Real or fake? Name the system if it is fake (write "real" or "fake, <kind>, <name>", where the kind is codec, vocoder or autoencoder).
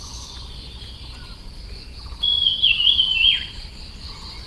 fake, vocoder, Vocos